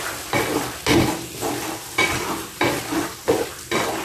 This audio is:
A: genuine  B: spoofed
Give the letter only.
B